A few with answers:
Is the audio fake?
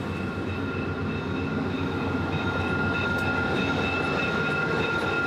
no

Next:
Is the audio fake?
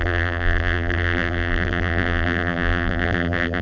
yes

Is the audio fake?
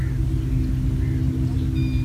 no